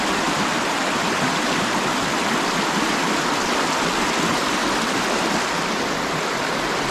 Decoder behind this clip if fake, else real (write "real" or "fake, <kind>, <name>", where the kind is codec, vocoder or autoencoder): real